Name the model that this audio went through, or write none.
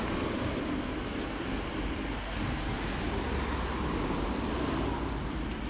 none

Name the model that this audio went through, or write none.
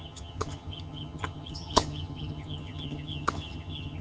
vocoder, HiFi-GAN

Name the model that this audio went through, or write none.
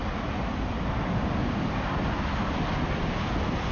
none